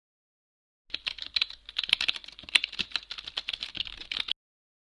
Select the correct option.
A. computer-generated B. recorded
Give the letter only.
B